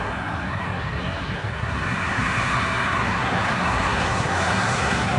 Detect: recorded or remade remade